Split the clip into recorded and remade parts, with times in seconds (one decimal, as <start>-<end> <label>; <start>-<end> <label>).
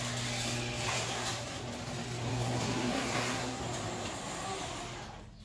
0.0-0.9 recorded; 0.9-1.6 remade; 1.6-2.3 recorded; 2.3-3.6 remade; 3.6-5.4 recorded